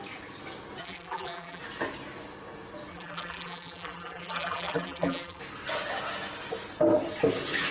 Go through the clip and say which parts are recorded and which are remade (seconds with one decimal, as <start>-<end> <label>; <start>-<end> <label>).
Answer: 0.0-0.8 recorded; 0.8-1.6 remade; 1.6-2.9 recorded; 2.9-5.4 remade; 5.4-7.7 recorded